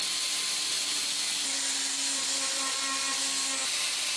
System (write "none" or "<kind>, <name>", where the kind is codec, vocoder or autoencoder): none